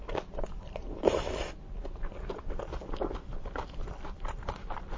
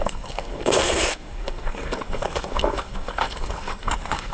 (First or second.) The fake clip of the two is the second